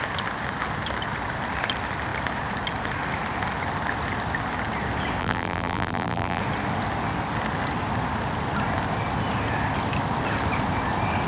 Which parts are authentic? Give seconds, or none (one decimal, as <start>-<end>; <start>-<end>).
0.0-5.2; 6.4-11.3